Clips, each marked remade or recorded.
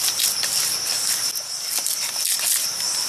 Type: recorded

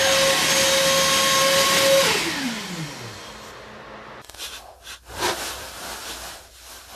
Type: recorded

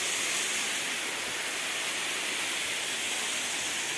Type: recorded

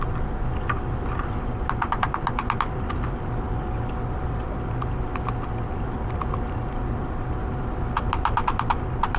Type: recorded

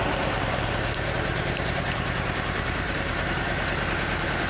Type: remade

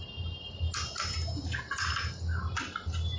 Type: recorded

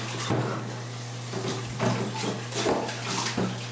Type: recorded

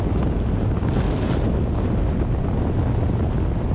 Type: recorded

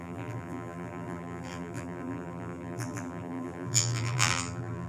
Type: remade